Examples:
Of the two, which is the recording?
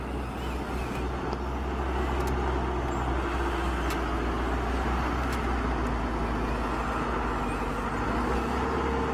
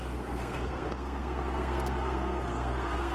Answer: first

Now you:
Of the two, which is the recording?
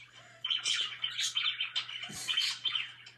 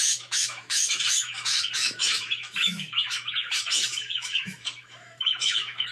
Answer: first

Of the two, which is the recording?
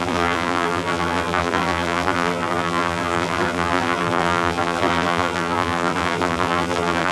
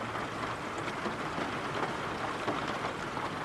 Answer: second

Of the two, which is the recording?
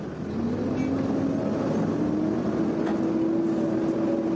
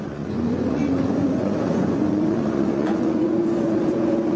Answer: first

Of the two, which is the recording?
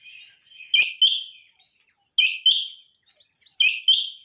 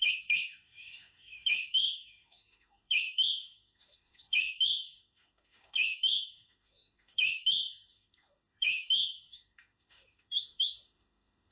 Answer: first